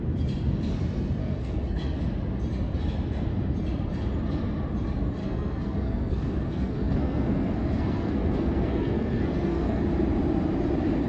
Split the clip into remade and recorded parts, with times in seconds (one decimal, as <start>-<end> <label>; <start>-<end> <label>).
0.0-1.2 recorded; 1.2-2.0 remade; 2.0-5.2 recorded; 5.2-9.8 remade; 9.8-11.1 recorded